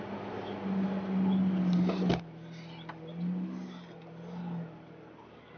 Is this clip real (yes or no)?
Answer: yes